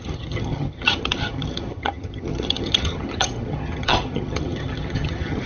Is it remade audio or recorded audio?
remade